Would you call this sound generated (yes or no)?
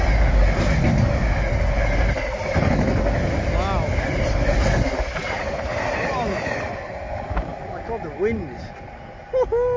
no